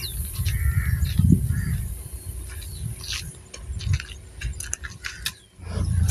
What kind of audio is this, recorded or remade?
recorded